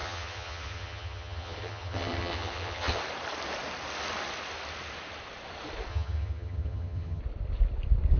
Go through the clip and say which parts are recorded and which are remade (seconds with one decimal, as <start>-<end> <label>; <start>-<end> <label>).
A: 0.0-3.0 remade; 3.0-5.9 recorded; 5.9-7.2 remade; 7.2-8.2 recorded